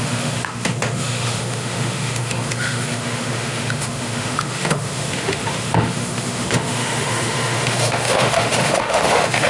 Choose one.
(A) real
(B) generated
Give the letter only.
B